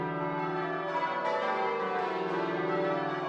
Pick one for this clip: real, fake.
real